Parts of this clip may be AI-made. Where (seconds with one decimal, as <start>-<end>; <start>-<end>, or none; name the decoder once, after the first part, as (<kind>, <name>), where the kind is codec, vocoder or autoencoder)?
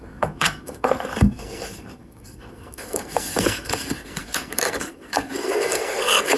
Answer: 0.0-6.4 (codec, SNAC)